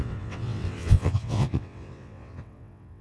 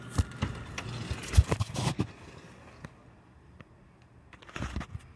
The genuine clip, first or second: second